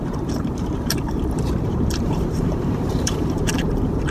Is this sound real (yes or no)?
no